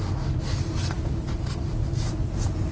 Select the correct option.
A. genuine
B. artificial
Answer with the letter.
A